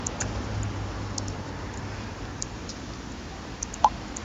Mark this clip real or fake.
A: real